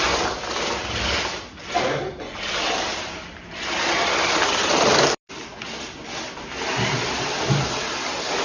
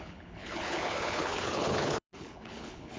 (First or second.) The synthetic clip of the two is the second